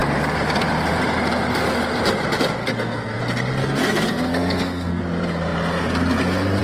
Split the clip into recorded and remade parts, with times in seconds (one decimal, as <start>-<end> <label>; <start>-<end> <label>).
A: 0.0-2.6 recorded; 2.6-3.2 remade; 3.2-3.6 recorded; 3.6-5.0 remade; 5.0-6.6 recorded